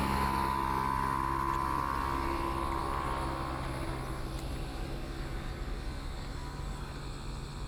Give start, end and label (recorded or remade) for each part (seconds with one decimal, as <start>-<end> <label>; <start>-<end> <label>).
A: 0.0-4.7 recorded; 4.7-6.9 remade; 6.9-7.7 recorded